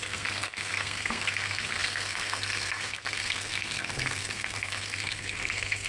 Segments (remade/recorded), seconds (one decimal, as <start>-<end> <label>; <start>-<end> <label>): 0.0-5.9 remade